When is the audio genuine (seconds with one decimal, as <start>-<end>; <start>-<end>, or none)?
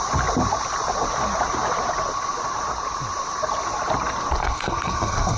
0.0-4.4